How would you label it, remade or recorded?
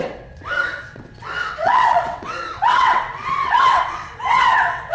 remade